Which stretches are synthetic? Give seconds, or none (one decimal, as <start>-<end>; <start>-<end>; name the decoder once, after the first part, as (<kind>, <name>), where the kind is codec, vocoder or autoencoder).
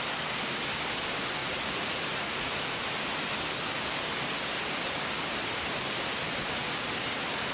1.4-2.6 (vocoder, Vocos)